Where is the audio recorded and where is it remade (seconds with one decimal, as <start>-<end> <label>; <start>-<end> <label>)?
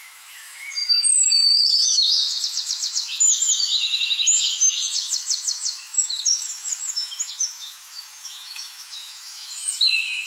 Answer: 0.0-10.3 remade